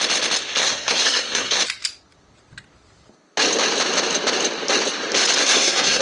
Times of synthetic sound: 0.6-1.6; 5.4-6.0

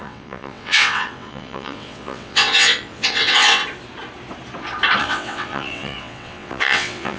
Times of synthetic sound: 0.0-3.6; 5.0-7.2

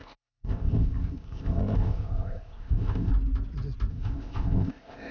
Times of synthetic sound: 0.0-3.1; 3.9-5.1

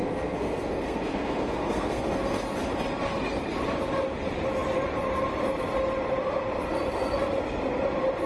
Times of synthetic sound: 0.0-2.1

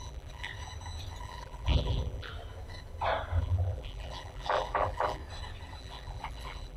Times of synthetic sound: 0.0-0.5; 1.2-2.3; 3.4-5.2; 5.8-6.8